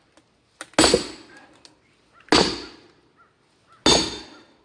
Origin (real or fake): real